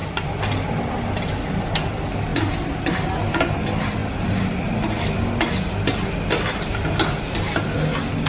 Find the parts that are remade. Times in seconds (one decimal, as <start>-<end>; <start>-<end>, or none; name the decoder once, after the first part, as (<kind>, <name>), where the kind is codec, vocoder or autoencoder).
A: 2.3-3.1 (vocoder, BigVGAN v2); 4.0-5.0